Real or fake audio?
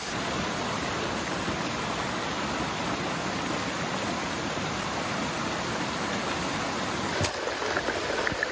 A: real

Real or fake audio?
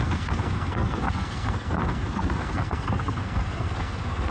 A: fake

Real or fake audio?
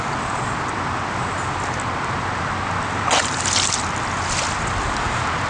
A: real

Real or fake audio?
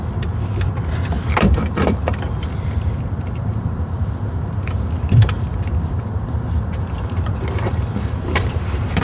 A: fake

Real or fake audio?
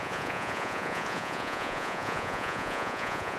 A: fake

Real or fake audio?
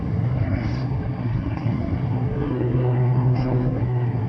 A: fake